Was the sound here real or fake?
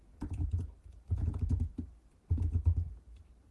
fake